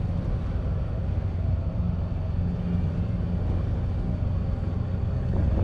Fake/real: real